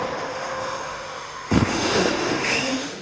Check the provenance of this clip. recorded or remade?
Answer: remade